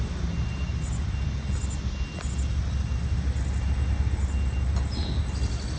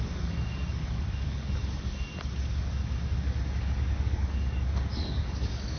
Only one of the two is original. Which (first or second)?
first